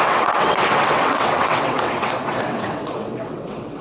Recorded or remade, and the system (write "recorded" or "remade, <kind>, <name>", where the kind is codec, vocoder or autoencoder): remade, vocoder, WaveNeXt